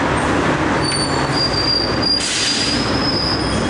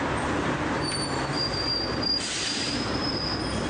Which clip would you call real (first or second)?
first